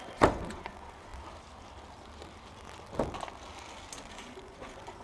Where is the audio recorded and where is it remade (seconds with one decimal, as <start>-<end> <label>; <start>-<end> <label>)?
0.0-1.1 remade; 1.1-4.1 recorded; 4.1-5.0 remade

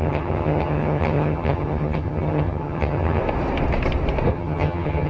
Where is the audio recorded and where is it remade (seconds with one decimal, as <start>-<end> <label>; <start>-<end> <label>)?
0.0-3.2 remade; 3.2-4.3 recorded; 4.3-5.1 remade

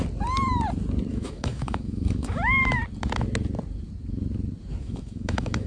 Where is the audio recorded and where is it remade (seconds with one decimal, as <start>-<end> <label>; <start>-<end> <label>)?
0.0-1.1 recorded; 1.1-2.8 remade; 2.8-4.8 recorded; 4.8-5.7 remade

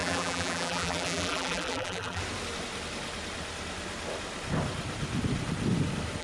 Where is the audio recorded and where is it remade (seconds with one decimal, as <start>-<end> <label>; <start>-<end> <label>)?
0.0-2.2 remade; 2.2-6.2 recorded

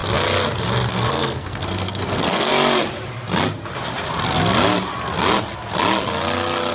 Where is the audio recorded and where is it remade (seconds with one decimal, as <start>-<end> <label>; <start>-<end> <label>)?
0.0-0.9 recorded; 0.9-2.5 remade; 2.5-6.7 recorded

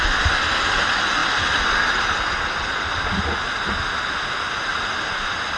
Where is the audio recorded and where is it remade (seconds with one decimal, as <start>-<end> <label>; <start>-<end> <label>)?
0.0-5.6 recorded

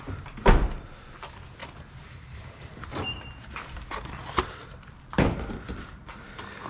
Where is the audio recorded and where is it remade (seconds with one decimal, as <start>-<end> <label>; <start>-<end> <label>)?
0.0-1.6 recorded; 1.6-5.5 remade; 5.5-6.7 recorded

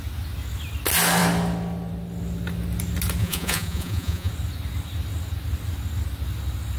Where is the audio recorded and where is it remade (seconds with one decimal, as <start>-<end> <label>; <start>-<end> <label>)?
0.0-3.2 recorded; 3.2-4.3 remade; 4.3-6.8 recorded